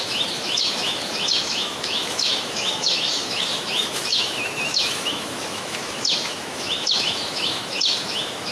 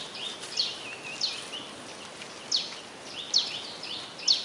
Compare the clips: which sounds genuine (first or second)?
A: second